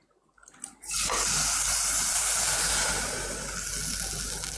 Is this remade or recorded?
recorded